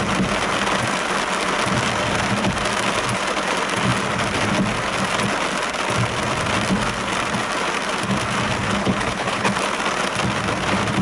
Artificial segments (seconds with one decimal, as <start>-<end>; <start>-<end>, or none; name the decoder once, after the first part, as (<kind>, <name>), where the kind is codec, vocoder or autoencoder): 8.8-9.5 (codec, HILCodec)